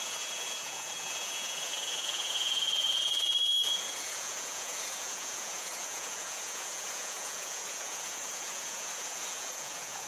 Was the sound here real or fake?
fake